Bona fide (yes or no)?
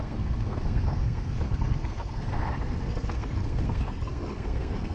no